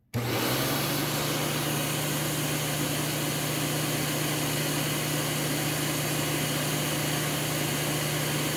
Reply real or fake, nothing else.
real